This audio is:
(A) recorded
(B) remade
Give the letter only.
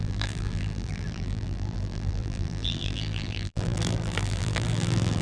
B